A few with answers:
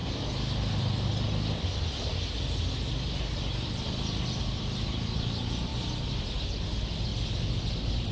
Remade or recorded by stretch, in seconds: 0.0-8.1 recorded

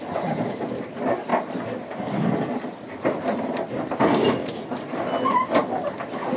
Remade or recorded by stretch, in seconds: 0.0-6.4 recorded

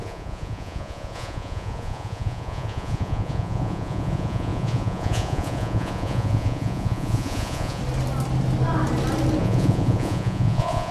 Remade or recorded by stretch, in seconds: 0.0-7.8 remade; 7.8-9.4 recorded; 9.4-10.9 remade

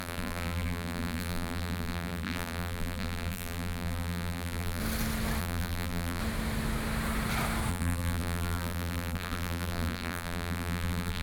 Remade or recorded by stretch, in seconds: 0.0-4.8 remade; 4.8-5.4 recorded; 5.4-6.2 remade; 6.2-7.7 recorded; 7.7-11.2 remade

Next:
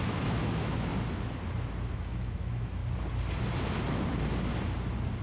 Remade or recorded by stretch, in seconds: 0.0-0.9 remade; 0.9-1.9 recorded; 1.9-2.8 remade; 2.8-5.2 recorded

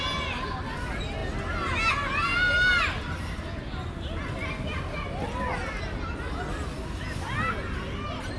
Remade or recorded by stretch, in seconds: 0.0-8.4 recorded

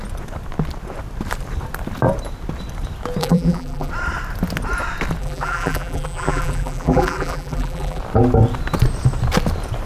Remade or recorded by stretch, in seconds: 0.0-3.2 recorded; 3.2-3.9 remade; 3.9-5.2 recorded; 5.2-8.0 remade; 8.0-9.9 recorded